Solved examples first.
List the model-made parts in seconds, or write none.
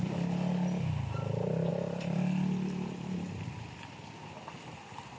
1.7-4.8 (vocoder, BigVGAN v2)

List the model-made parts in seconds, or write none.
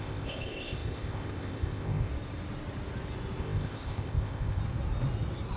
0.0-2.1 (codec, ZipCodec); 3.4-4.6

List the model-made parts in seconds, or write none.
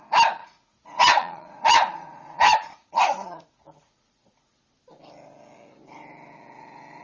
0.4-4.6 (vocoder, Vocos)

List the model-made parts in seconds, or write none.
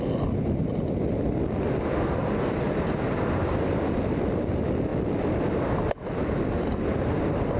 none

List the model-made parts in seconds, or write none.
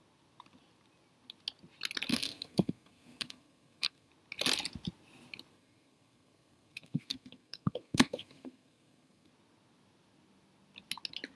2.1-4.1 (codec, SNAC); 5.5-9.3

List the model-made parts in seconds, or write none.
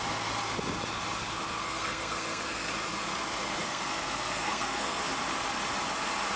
1.6-2.7 (codec, SNAC); 3.6-5.0